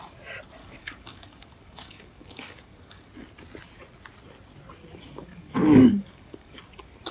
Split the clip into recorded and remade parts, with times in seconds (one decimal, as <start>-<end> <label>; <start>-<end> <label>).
0.0-0.6 recorded; 0.6-3.1 remade; 3.1-5.2 recorded; 5.2-6.6 remade; 6.6-7.1 recorded

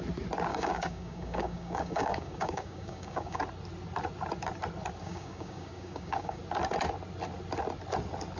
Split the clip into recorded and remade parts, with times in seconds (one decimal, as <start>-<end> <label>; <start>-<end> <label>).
0.0-0.5 recorded; 0.5-3.4 remade; 3.4-5.0 recorded; 5.0-6.4 remade; 6.4-8.4 recorded

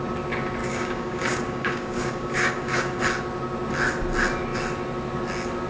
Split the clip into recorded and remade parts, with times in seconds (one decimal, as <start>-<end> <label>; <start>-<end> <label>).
0.0-0.6 recorded; 0.6-3.0 remade; 3.0-5.7 recorded

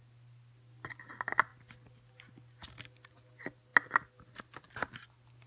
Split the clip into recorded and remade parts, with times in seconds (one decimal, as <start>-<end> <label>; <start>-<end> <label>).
0.0-5.5 recorded

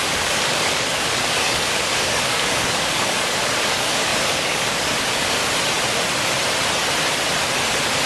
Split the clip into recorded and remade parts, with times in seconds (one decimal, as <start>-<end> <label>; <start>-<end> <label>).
0.0-5.4 remade; 5.4-8.1 recorded